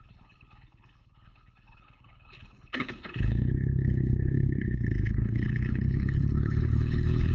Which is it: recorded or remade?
remade